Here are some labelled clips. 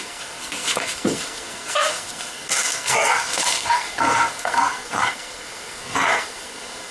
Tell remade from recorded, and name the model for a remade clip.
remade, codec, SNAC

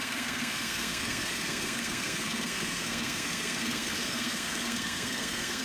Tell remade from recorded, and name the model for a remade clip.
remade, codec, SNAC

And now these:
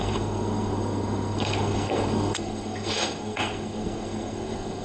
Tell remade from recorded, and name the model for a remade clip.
remade, codec, SNAC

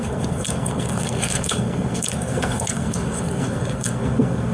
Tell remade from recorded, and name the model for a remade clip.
remade, codec, SNAC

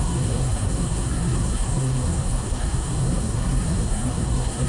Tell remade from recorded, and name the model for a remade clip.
remade, codec, SNAC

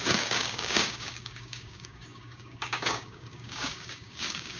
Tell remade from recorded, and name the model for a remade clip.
remade, codec, DAC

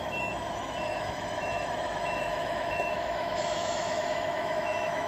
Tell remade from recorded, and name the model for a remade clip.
remade, autoencoder, DAC-VAE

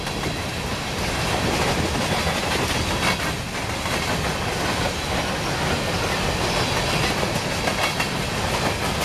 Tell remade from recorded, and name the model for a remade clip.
recorded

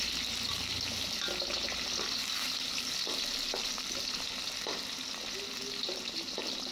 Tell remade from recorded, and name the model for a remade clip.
recorded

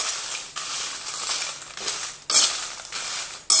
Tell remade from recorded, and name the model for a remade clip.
recorded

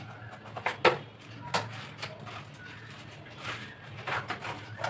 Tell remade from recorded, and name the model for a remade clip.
recorded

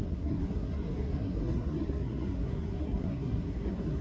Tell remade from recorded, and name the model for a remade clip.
remade, codec, SNAC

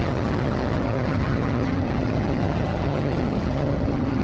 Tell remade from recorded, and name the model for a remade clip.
remade, vocoder, HiFi-GAN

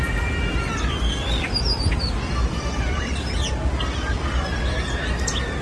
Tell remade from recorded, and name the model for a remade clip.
recorded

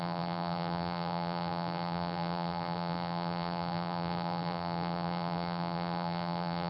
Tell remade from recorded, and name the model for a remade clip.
remade, vocoder, BigVGAN v2